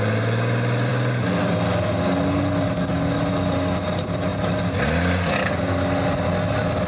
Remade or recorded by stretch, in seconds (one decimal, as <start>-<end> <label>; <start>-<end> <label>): 0.0-6.9 recorded